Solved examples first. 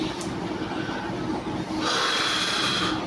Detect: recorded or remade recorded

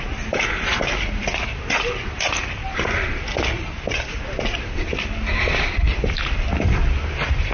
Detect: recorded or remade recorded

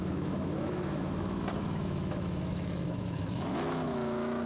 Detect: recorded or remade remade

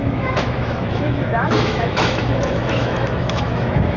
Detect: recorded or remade remade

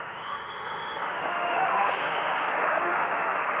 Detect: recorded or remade remade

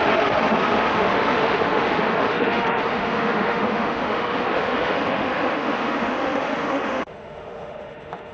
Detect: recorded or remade remade